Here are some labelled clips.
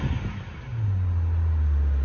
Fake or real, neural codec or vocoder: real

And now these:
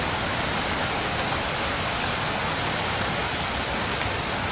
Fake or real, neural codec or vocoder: real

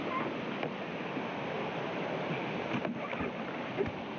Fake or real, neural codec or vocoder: real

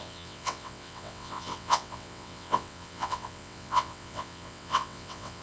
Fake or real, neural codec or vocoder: fake, vocoder, WaveNeXt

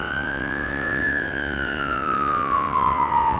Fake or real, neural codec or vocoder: fake, vocoder, WaveNeXt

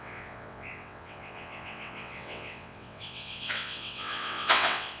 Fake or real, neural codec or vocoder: fake, vocoder, WaveNeXt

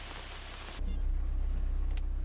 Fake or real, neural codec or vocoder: real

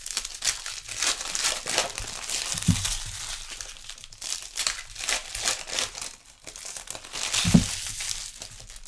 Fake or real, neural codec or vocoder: real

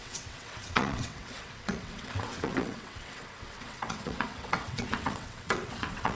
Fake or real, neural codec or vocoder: fake, vocoder, WaveNeXt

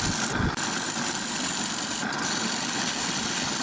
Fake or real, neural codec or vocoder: real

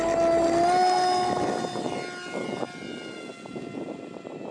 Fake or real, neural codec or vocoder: real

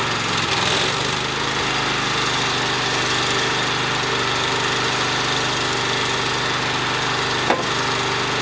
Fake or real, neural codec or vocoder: real